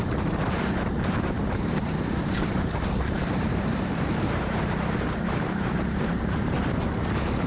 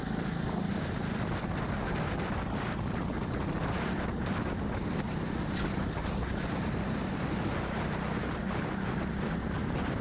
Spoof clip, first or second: first